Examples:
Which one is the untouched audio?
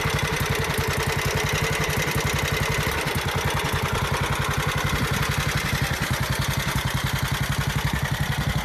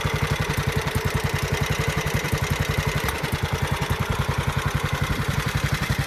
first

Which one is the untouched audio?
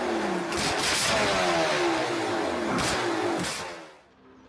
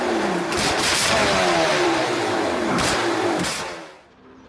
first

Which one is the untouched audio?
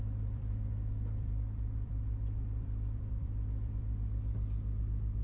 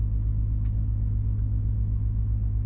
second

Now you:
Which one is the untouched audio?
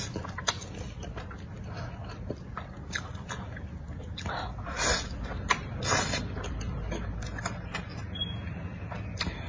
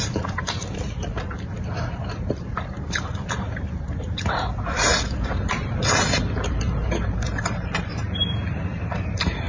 first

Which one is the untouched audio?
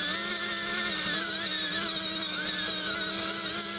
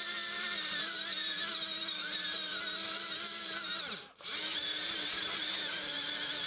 first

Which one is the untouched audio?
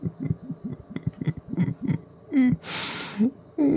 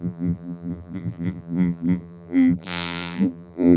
first